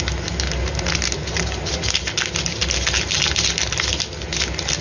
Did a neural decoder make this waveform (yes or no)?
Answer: no